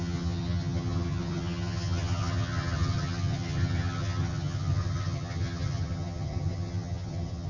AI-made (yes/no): yes